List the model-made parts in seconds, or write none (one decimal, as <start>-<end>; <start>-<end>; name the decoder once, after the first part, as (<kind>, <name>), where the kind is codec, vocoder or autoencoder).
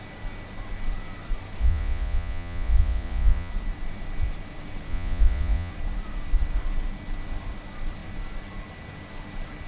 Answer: 1.6-3.5 (vocoder, Vocos); 4.9-5.7